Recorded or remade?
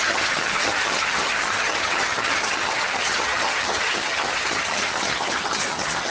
remade